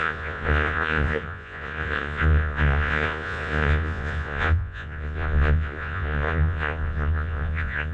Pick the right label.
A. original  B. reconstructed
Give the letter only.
B